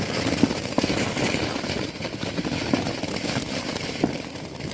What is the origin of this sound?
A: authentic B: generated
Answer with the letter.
A